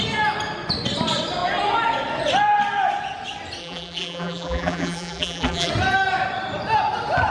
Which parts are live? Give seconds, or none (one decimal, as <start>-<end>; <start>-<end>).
0.0-3.6; 5.7-7.3